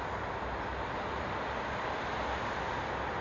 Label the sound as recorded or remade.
recorded